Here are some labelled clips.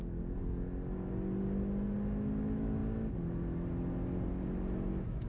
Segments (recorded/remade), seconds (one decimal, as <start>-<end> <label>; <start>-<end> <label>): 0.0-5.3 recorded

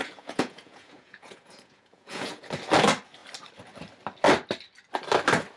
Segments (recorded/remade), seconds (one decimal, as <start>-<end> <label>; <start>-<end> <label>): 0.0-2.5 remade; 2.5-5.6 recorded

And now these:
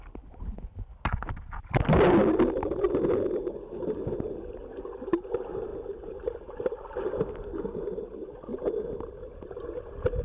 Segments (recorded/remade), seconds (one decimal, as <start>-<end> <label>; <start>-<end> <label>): 0.0-10.2 recorded

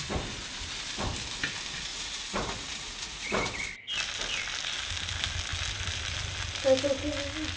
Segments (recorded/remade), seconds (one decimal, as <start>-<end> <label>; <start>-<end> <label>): 0.0-1.9 recorded; 1.9-3.5 remade; 3.5-7.6 recorded

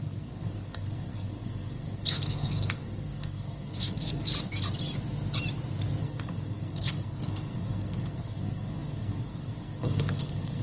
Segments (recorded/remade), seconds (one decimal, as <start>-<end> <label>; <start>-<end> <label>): 0.0-4.3 remade; 4.3-6.0 recorded; 6.0-10.6 remade

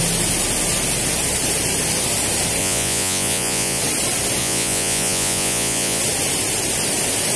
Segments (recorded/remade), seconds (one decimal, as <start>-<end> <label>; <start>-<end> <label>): 0.0-2.6 recorded; 2.6-3.8 remade; 3.8-4.4 recorded; 4.4-6.0 remade; 6.0-7.4 recorded